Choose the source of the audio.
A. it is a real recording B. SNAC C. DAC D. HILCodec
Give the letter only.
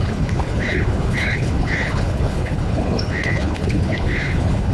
D